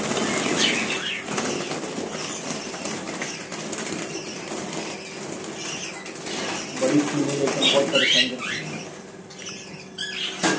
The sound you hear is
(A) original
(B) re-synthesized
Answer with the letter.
A